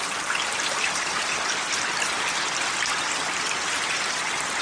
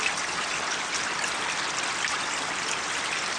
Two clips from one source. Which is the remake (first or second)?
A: first